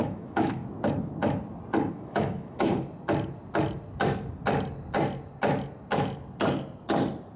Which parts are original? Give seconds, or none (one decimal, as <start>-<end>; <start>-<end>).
0.6-1.9; 2.7-7.4